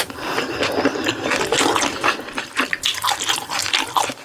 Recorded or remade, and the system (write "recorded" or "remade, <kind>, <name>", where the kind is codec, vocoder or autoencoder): remade, vocoder, BigVGAN v2